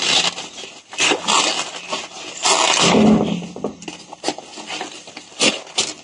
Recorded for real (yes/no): yes